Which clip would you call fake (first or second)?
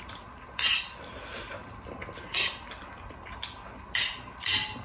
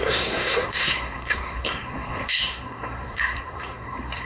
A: second